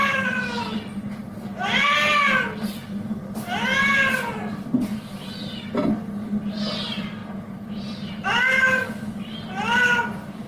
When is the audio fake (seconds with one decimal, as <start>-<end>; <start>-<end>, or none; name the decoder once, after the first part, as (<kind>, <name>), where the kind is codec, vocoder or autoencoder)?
0.0-0.6 (vocoder, BigVGAN v2)

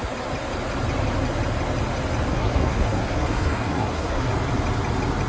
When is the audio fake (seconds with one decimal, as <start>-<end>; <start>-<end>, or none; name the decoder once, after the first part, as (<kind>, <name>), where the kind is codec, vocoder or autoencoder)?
2.3-4.3 (codec, SNAC)

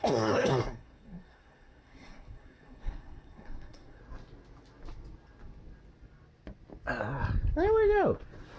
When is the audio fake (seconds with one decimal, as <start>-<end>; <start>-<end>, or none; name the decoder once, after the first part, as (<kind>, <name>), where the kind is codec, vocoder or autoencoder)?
0.0-4.0 (codec, SNAC)

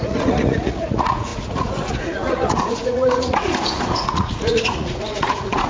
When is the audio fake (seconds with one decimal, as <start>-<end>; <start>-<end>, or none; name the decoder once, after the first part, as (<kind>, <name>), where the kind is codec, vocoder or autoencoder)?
0.0-5.7 (vocoder, Vocos)

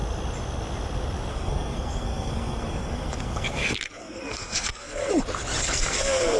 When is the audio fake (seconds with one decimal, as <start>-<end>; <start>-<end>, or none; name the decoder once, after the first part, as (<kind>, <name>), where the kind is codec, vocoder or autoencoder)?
1.3-5.1 (codec, SNAC); 5.6-6.4

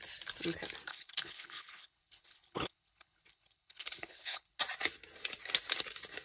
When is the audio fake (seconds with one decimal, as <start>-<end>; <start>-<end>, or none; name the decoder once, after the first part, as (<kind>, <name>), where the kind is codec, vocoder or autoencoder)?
0.9-4.6 (codec, HILCodec)